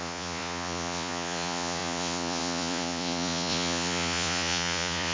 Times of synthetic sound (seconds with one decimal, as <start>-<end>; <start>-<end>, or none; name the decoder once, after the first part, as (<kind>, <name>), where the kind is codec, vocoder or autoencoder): 0.0-5.1 (vocoder, Vocos)